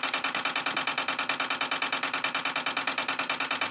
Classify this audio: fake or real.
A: real